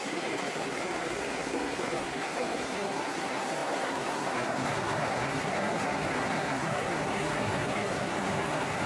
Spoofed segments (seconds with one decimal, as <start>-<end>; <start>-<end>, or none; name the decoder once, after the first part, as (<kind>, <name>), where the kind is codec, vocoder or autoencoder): 0.0-8.9 (codec, SNAC)